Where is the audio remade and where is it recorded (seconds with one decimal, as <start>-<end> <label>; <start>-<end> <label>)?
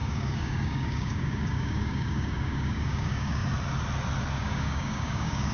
0.0-3.4 remade; 3.4-4.3 recorded; 4.3-5.5 remade